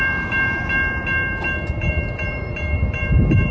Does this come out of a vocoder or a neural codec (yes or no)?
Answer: yes